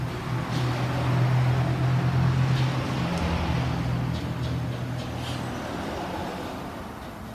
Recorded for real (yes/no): yes